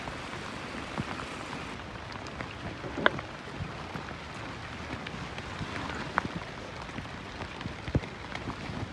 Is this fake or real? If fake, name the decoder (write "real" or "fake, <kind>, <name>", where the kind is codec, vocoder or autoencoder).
real